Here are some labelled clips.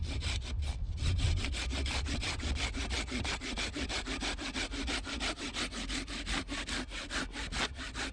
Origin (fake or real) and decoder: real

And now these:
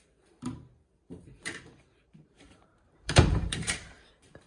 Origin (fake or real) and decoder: fake, vocoder, BigVGAN v2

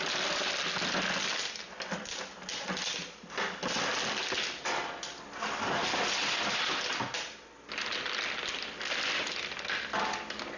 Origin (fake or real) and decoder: real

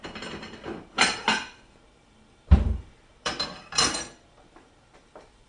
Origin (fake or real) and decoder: fake, vocoder, BigVGAN v2